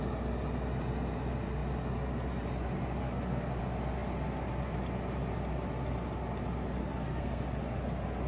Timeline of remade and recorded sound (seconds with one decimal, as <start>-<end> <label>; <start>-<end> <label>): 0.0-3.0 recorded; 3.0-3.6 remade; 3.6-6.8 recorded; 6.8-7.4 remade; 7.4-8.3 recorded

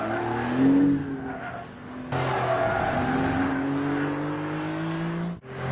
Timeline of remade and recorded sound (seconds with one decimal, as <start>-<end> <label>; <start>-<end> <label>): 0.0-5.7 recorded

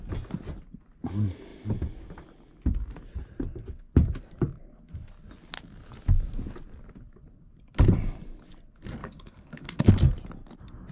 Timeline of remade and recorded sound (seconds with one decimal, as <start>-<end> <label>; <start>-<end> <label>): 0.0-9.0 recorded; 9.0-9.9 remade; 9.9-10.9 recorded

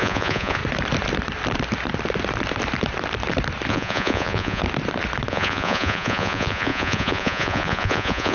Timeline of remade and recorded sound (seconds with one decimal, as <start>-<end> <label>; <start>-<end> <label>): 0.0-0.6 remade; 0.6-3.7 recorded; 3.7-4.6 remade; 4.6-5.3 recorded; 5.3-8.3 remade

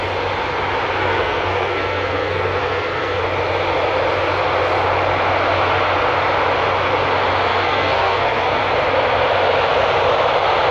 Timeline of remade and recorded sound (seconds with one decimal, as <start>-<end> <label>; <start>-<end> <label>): 0.0-1.0 recorded; 1.0-3.2 remade; 3.2-7.5 recorded; 7.5-8.6 remade; 8.6-10.7 recorded

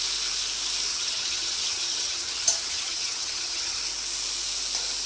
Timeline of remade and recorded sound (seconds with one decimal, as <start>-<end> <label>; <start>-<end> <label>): 0.0-0.9 recorded; 0.9-3.8 remade; 3.8-5.1 recorded

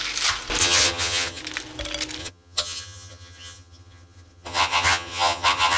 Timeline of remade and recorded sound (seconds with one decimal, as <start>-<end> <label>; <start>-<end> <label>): 0.0-0.6 recorded; 0.6-1.4 remade; 1.4-2.2 recorded; 2.2-5.8 remade